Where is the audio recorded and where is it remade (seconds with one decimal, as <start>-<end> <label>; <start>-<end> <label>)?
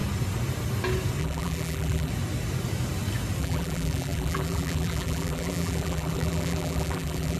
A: 0.0-1.2 recorded; 1.2-2.1 remade; 2.1-3.4 recorded; 3.4-7.4 remade